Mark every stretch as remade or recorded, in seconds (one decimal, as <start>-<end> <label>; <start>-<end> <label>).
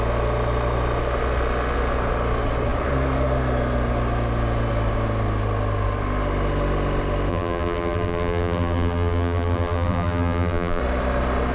0.0-7.3 recorded; 7.3-10.8 remade; 10.8-11.5 recorded